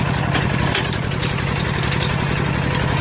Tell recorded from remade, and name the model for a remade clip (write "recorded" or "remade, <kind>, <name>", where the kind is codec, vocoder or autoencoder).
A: recorded